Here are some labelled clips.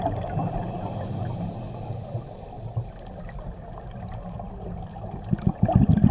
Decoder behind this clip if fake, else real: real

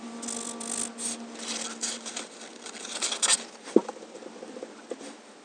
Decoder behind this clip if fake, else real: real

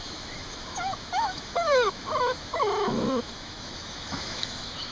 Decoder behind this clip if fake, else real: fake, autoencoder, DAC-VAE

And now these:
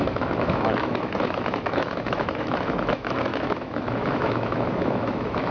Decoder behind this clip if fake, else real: fake, autoencoder, DAC-VAE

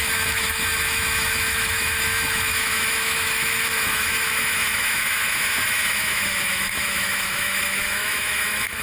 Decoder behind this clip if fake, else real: fake, autoencoder, DAC-VAE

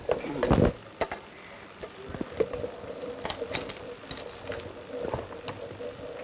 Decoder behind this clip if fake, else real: real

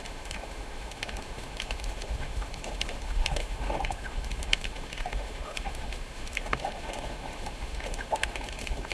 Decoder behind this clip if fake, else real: fake, autoencoder, DAC-VAE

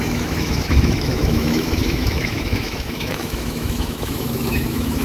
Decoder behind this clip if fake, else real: fake, autoencoder, DAC-VAE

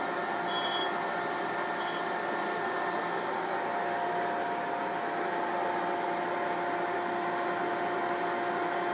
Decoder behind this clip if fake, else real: real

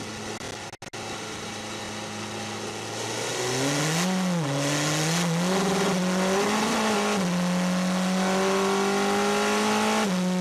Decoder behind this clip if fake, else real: real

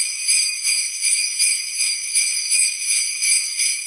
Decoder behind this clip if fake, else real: fake, autoencoder, DAC-VAE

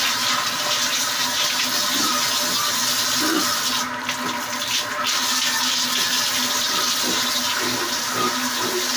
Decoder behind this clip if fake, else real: real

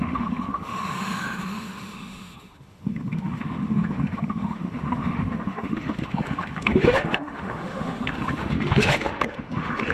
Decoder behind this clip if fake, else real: fake, autoencoder, DAC-VAE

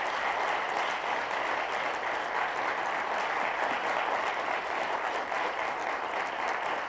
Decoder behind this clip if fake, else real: real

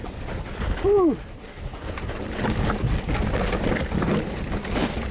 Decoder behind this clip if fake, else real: real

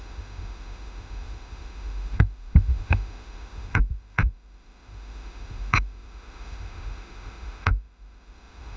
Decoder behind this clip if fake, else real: fake, autoencoder, DAC-VAE